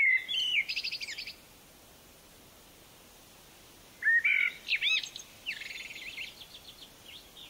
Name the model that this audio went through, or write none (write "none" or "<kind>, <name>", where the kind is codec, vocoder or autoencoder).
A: none